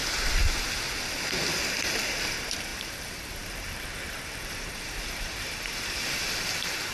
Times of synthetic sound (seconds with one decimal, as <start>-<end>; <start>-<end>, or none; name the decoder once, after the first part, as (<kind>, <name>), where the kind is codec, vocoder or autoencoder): 1.9-6.9 (vocoder, BigVGAN v2)